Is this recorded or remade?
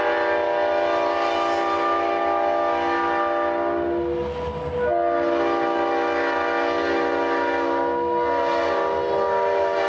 recorded